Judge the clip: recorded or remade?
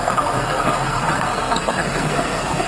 remade